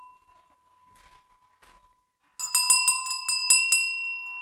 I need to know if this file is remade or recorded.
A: recorded